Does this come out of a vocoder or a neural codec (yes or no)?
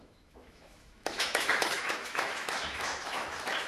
yes